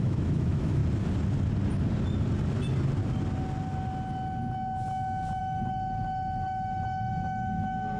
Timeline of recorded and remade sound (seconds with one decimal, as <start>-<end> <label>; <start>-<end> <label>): 0.0-0.8 remade; 0.8-5.4 recorded; 5.4-8.0 remade